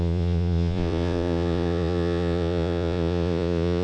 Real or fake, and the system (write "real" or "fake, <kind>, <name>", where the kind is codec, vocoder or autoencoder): fake, vocoder, Vocos